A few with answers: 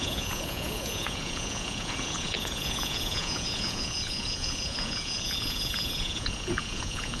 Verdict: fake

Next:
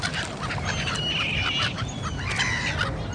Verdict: real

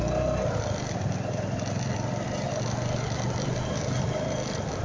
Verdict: real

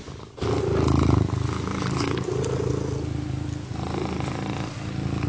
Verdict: real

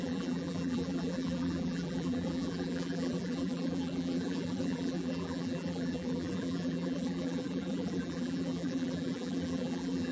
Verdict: fake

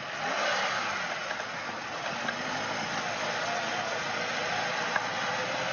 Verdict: real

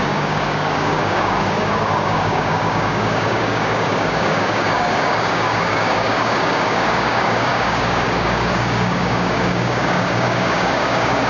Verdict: fake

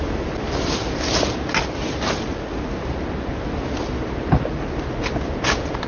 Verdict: real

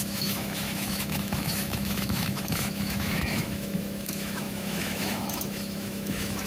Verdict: fake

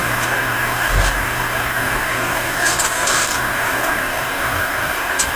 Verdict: fake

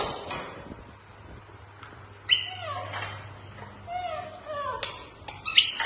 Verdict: real